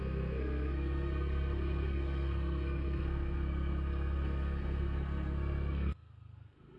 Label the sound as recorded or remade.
remade